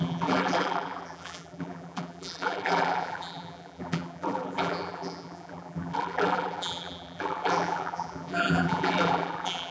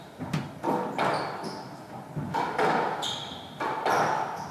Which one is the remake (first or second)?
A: first